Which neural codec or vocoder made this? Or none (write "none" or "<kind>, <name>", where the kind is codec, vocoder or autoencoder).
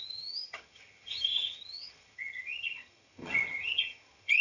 vocoder, HiFi-GAN